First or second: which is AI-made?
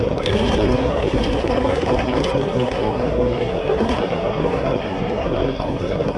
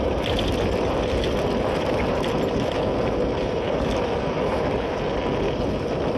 first